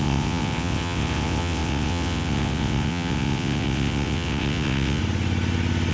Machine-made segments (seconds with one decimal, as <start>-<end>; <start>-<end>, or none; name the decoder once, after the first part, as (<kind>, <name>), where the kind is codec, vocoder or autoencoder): 0.0-5.0 (vocoder, WaveNeXt)